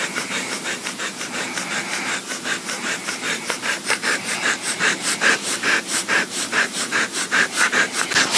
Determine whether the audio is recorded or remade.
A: remade